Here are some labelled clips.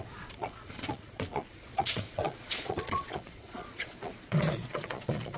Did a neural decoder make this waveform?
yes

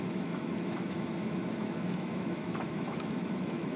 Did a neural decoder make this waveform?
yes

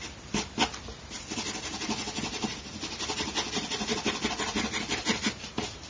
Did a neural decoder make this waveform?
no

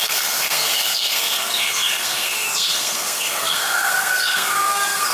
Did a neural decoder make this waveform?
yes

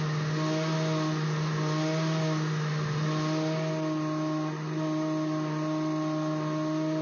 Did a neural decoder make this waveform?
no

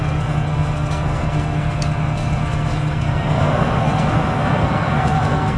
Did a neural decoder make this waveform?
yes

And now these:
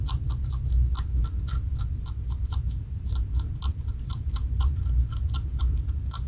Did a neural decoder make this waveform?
no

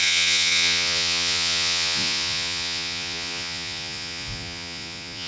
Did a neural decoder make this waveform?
yes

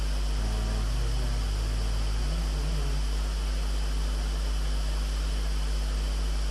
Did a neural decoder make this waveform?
no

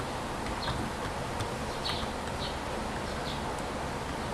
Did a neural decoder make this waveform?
no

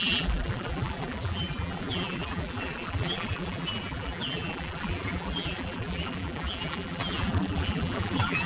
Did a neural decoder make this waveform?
yes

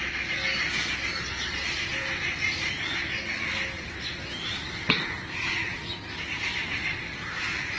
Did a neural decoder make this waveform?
no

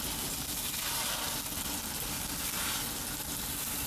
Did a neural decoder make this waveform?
no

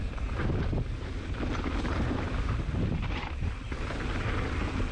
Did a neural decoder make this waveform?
no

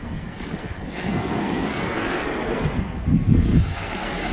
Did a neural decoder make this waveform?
yes